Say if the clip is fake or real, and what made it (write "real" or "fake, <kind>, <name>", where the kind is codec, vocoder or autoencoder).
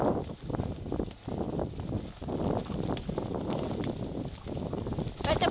real